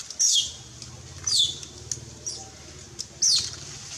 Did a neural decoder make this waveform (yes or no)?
no